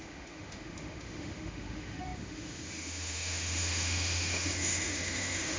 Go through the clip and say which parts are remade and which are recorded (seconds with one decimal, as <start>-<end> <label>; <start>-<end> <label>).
0.0-5.6 remade